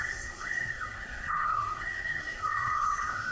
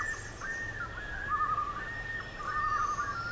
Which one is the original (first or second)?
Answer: second